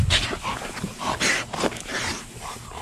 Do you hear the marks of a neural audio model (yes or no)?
no